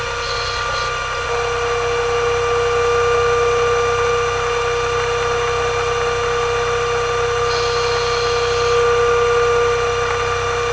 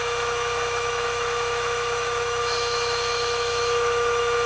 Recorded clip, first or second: first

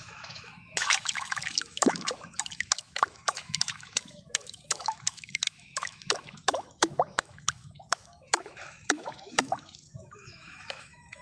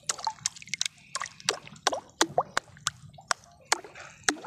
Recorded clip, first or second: second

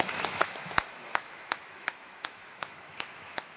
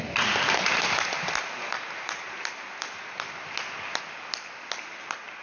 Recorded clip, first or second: second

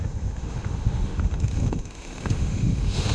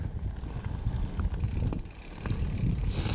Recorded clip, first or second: second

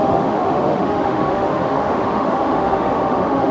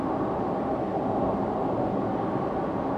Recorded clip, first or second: second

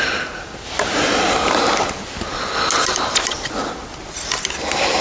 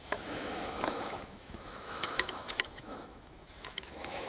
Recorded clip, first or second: first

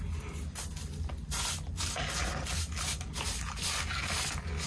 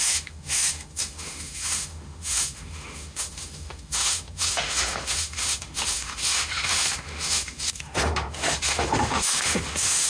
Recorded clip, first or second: first